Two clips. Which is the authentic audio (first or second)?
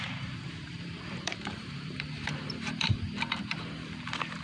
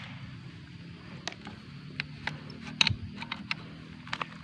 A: second